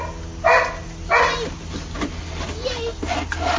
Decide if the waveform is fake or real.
real